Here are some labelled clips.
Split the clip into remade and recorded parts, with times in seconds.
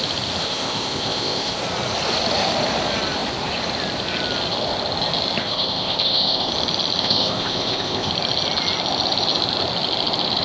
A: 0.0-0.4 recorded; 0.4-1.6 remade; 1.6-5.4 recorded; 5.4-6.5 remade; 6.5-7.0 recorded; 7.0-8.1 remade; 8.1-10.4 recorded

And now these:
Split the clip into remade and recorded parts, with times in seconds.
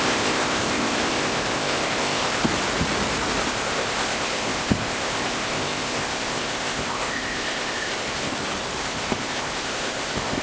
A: 0.0-2.4 remade; 2.4-3.5 recorded; 3.5-8.3 remade; 8.3-8.8 recorded; 8.8-10.4 remade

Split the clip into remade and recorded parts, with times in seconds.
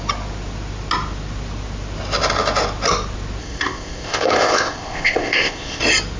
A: 0.0-3.4 recorded; 3.4-5.8 remade; 5.8-6.2 recorded